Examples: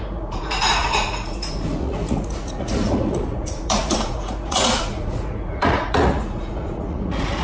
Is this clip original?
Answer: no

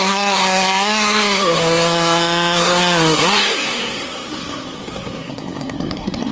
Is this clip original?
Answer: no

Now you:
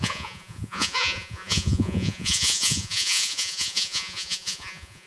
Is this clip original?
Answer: no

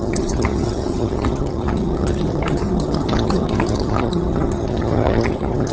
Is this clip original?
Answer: no